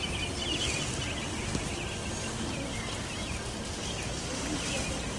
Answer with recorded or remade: recorded